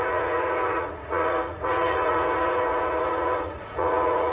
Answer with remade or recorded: remade